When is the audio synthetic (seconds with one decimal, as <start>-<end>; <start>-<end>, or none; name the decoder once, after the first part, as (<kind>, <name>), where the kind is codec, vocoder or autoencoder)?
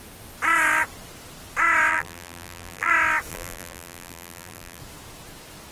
1.9-2.9 (vocoder, BigVGAN v2); 3.3-4.8